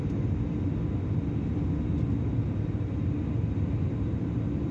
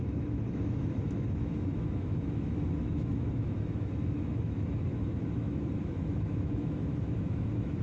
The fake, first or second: second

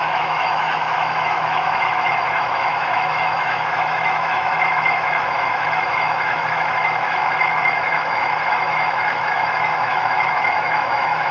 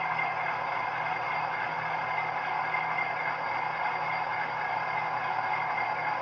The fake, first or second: first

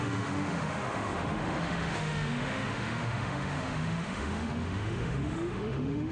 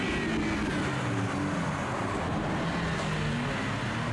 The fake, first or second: first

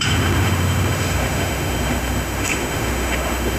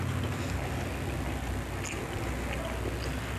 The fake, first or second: first